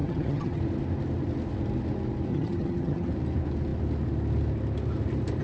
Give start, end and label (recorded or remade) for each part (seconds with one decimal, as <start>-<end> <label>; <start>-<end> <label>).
0.0-0.6 remade; 0.6-2.3 recorded; 2.3-3.1 remade; 3.1-5.4 recorded